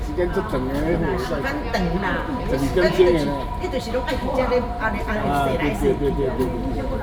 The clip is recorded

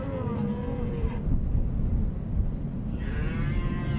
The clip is remade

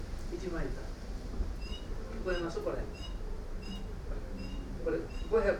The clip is remade